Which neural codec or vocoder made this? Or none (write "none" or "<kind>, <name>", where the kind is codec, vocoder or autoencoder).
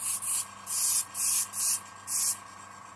none